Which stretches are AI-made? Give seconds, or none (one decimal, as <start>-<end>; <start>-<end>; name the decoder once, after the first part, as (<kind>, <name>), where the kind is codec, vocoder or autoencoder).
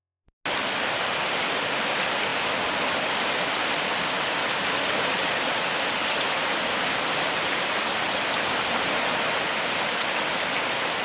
none